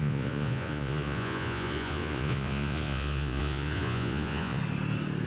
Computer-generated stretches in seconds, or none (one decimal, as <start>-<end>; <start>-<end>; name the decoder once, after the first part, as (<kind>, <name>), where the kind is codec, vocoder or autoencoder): 0.0-4.6 (vocoder, Vocos)